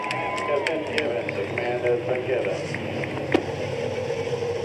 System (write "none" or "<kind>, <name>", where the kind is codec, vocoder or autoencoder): none